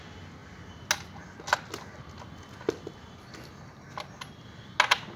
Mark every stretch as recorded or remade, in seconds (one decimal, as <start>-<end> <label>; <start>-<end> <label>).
0.0-5.2 recorded